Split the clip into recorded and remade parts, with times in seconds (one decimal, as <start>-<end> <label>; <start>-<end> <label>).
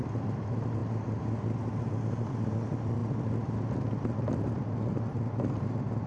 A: 0.0-6.1 recorded